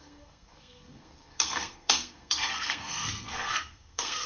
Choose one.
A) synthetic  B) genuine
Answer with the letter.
A